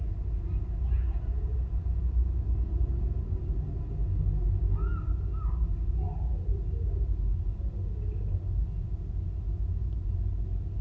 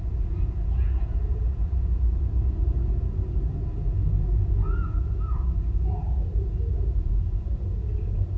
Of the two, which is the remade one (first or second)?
second